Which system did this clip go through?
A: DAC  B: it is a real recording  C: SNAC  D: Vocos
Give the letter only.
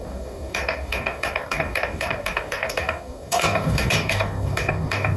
A